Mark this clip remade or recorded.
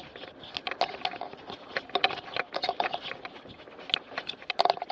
recorded